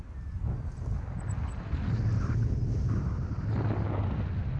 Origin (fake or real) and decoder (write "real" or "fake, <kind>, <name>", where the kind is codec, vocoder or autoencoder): real